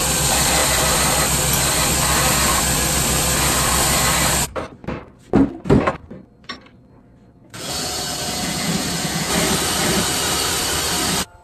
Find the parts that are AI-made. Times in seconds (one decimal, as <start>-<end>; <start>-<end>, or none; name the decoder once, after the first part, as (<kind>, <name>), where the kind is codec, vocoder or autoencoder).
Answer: 7.4-9.3 (vocoder, Vocos)